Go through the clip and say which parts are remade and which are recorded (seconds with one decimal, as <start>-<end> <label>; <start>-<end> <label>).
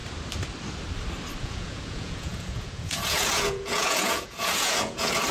0.0-1.4 recorded; 1.4-5.3 remade